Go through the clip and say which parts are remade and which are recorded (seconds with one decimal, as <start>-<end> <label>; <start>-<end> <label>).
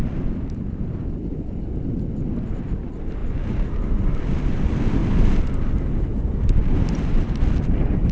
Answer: 0.0-8.1 recorded